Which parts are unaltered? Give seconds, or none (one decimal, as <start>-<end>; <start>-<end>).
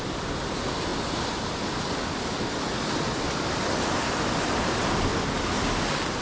0.0-6.2